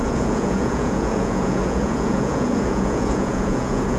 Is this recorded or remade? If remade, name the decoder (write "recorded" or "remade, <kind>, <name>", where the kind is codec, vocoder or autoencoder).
remade, vocoder, Vocos